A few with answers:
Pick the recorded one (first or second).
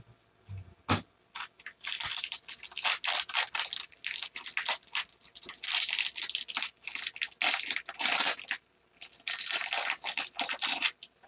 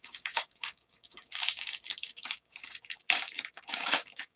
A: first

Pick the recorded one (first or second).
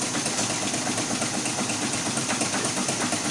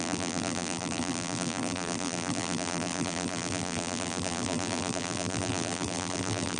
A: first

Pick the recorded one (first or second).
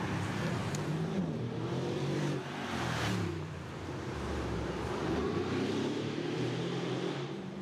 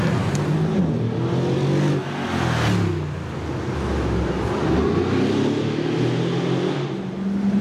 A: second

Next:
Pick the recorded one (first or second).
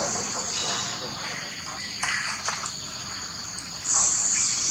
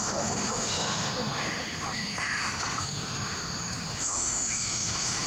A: first